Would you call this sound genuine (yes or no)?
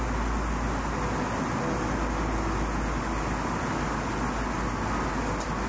yes